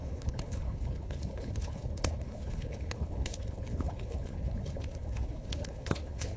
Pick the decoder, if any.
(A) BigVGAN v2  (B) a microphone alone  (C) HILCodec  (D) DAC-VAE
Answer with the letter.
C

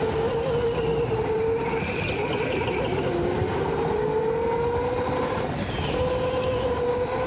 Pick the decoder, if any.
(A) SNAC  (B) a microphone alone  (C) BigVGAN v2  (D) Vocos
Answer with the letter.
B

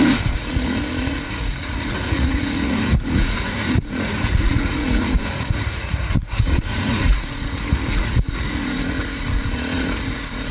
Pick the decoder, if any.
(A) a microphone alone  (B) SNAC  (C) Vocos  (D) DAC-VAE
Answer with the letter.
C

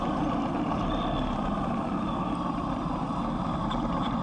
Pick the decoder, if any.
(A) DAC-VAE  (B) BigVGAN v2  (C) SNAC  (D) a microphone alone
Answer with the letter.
B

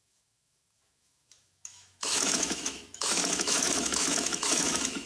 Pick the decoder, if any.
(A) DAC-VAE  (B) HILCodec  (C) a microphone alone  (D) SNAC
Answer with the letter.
A